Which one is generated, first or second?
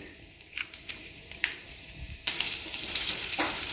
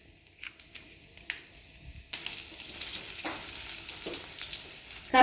first